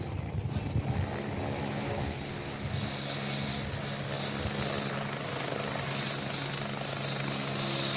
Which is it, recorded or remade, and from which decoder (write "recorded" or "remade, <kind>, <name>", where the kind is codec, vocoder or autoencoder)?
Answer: recorded